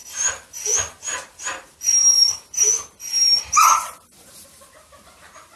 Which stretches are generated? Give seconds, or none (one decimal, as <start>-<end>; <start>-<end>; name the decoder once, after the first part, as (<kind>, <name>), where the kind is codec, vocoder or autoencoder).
3.4-5.6 (vocoder, BigVGAN v2)